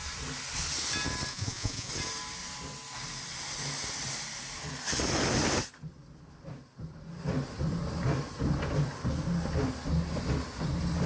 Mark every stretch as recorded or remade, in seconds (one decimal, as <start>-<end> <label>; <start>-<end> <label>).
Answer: 0.0-1.3 recorded; 1.3-1.9 remade; 1.9-11.1 recorded

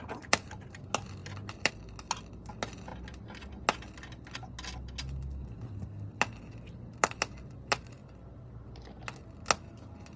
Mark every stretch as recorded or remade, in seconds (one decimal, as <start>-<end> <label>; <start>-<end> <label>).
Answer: 0.0-10.2 recorded

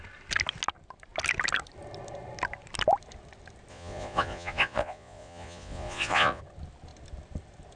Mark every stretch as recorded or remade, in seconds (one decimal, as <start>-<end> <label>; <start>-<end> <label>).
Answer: 0.0-3.7 recorded; 3.7-6.4 remade; 6.4-7.8 recorded

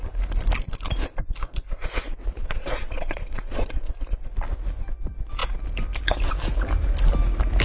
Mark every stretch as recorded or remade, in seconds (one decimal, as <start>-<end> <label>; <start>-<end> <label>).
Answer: 0.0-2.4 recorded; 2.4-3.9 remade; 3.9-7.6 recorded

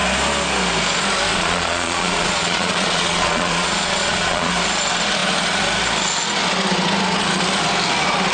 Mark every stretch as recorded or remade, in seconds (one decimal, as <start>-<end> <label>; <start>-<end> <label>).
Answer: 0.0-1.3 recorded; 1.3-4.5 remade; 4.5-8.3 recorded

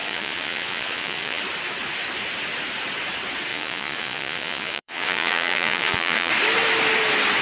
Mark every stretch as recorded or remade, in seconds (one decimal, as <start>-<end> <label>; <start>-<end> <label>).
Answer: 0.0-1.4 remade; 1.4-3.5 recorded; 3.5-6.3 remade; 6.3-7.4 recorded